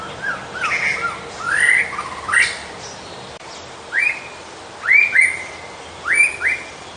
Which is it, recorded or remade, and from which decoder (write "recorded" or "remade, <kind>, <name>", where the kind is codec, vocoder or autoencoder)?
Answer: recorded